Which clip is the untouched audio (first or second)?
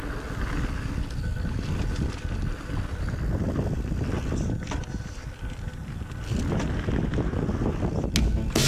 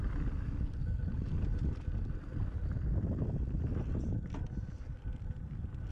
first